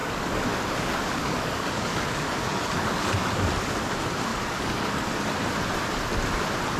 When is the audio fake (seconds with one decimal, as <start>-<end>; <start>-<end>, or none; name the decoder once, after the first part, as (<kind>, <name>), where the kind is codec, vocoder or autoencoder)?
0.0-3.9 (codec, DAC); 4.3-5.1